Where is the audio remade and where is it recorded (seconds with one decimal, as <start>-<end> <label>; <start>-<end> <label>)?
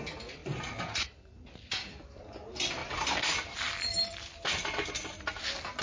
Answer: 0.0-2.8 recorded; 2.8-5.1 remade; 5.1-5.8 recorded